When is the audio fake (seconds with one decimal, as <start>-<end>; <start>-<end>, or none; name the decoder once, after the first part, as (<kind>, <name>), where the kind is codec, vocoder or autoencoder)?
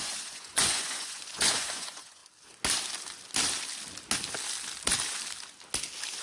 0.0-2.2 (vocoder, Vocos)